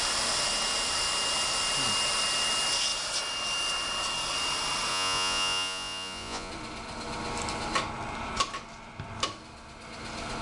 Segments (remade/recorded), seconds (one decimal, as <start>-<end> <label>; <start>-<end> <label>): 0.0-4.9 recorded; 4.9-6.5 remade; 6.5-10.4 recorded